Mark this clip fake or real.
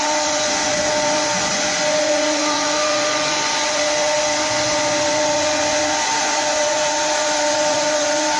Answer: fake